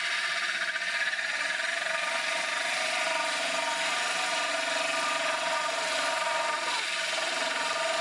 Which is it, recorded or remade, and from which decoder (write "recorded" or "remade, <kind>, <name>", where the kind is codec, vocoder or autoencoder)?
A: recorded